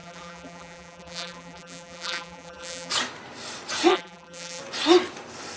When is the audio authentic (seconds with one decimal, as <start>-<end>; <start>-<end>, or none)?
2.9-3.9; 4.6-5.6